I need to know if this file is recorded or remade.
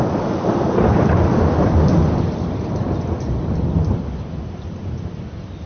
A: recorded